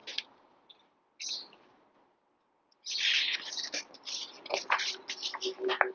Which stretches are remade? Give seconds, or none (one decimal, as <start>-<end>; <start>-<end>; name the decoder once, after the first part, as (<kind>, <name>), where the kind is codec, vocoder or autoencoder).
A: none